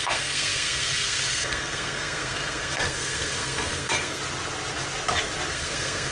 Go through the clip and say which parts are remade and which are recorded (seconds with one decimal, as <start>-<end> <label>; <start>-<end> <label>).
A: 0.0-4.2 remade; 4.2-5.5 recorded; 5.5-6.1 remade